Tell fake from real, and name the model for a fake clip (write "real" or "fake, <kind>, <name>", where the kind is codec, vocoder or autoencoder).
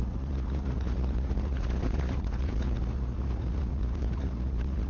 fake, vocoder, Vocos